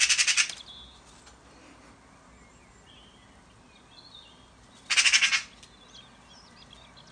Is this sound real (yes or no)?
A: yes